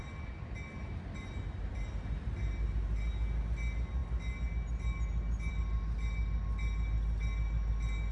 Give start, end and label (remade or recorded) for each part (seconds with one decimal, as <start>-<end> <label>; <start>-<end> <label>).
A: 0.0-8.1 recorded